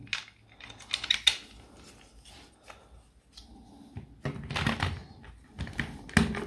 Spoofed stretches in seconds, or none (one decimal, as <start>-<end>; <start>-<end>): none